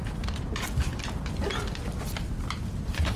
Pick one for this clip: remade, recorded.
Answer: recorded